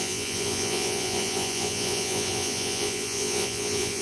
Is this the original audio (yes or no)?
no